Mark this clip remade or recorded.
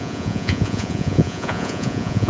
remade